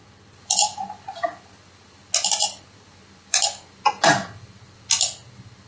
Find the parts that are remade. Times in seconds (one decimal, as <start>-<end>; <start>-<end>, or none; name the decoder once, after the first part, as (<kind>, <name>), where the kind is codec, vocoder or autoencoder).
none